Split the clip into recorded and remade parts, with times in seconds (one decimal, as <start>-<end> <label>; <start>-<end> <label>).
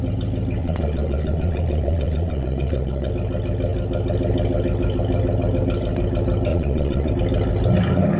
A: 0.0-0.6 recorded; 0.6-3.1 remade; 3.1-6.5 recorded; 6.5-7.1 remade; 7.1-8.2 recorded